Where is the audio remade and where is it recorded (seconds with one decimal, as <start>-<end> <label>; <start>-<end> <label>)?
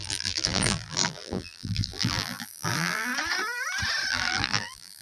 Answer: 0.0-3.1 remade; 3.1-4.1 recorded; 4.1-5.0 remade